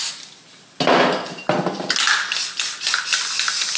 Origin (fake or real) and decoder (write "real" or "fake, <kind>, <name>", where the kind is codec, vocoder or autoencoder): real